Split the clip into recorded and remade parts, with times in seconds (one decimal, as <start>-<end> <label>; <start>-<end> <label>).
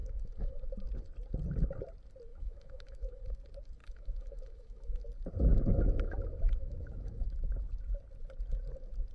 0.0-0.6 remade; 0.6-2.3 recorded; 2.3-3.2 remade; 3.2-3.8 recorded; 3.8-5.0 remade; 5.0-5.5 recorded; 5.5-7.4 remade; 7.4-9.1 recorded